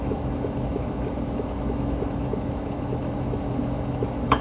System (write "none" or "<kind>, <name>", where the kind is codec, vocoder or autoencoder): autoencoder, DAC-VAE